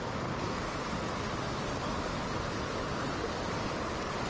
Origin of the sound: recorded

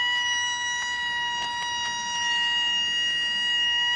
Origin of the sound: recorded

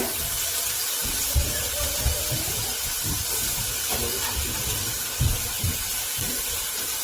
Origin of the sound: recorded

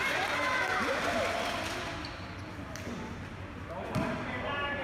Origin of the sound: recorded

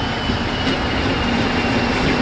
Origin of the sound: recorded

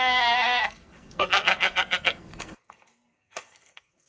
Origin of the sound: remade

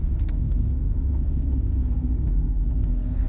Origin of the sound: remade